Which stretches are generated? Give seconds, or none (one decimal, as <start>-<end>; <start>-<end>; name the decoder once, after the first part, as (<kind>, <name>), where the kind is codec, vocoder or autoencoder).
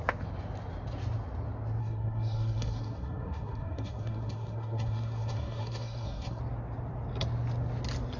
1.8-6.4 (codec, SNAC)